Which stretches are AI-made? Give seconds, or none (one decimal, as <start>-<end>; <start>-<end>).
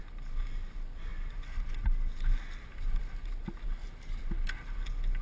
none